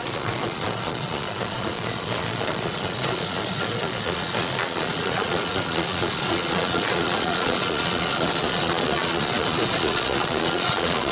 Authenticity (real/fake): fake